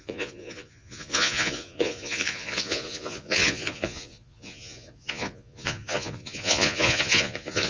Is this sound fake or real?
fake